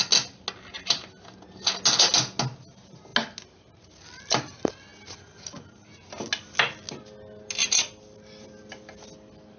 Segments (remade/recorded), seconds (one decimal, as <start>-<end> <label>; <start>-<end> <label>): 0.0-9.6 recorded